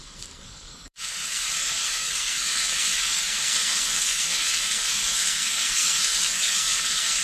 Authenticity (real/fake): fake